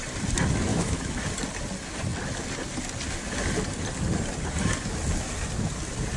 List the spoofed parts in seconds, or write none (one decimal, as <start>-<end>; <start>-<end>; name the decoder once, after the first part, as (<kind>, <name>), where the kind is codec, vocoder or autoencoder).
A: 0.7-1.3 (autoencoder, DAC-VAE)